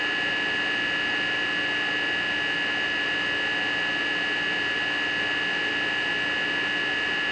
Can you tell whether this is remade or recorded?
recorded